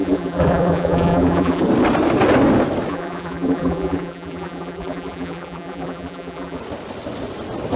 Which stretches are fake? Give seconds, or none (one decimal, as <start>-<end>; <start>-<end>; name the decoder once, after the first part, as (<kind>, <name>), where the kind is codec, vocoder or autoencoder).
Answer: 0.0-1.6 (vocoder, BigVGAN v2); 2.9-6.6